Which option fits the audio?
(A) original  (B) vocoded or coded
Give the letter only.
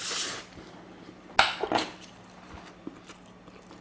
A